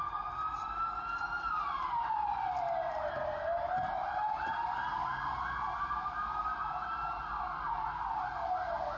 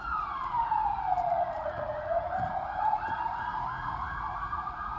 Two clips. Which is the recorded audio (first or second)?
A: first